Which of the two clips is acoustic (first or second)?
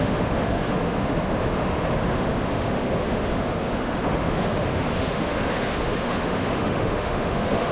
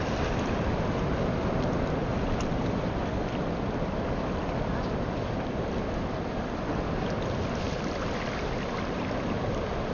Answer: second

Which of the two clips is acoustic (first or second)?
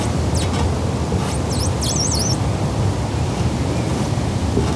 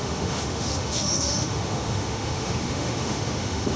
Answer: first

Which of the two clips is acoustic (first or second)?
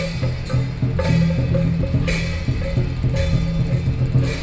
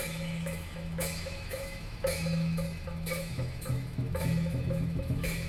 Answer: first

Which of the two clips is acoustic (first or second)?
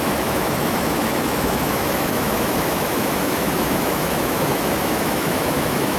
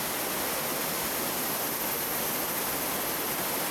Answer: second